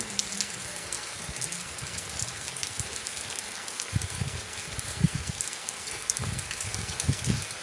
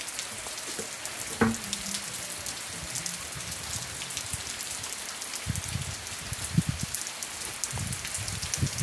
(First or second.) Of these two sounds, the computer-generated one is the first